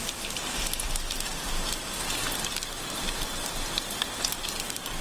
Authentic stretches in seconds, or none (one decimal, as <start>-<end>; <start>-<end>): 0.0-5.0